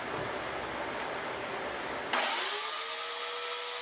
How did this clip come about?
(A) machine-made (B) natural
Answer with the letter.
B